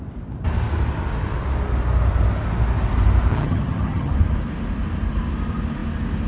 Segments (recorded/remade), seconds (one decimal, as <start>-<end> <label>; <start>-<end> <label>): 0.0-3.3 recorded; 3.3-4.1 remade; 4.1-6.3 recorded